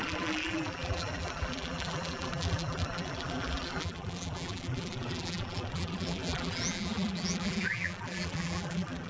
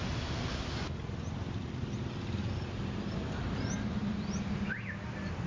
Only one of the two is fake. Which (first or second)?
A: first